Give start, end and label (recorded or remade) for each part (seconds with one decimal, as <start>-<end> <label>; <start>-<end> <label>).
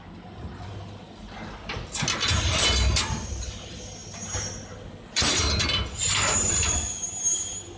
0.0-7.8 recorded